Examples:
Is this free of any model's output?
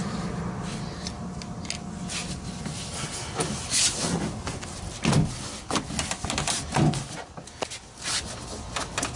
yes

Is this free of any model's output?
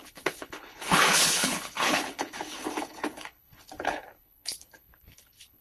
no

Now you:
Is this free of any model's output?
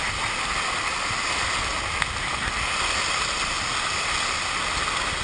yes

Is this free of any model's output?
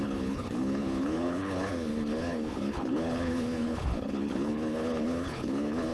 no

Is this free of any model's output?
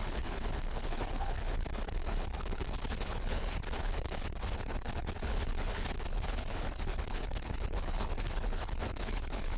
no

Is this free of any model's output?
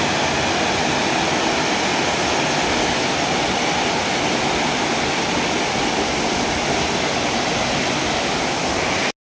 yes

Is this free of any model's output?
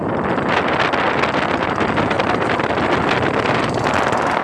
yes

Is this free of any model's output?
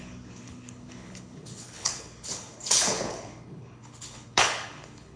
no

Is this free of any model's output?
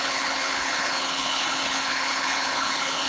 no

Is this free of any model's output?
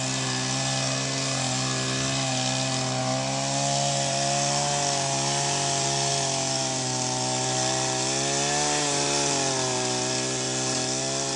yes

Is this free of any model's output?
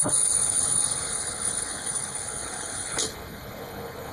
no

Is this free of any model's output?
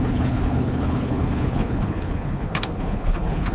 no